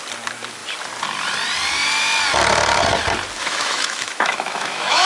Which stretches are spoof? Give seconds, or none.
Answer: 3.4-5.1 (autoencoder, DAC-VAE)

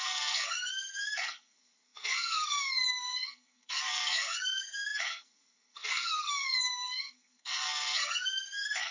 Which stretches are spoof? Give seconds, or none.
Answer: 0.0-8.9 (codec, SNAC)

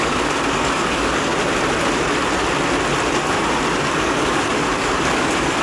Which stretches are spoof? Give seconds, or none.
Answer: 0.0-1.3 (codec, DAC); 3.8-5.6

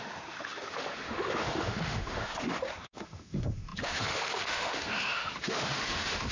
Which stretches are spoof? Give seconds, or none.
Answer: 0.0-6.3 (autoencoder, DAC-VAE)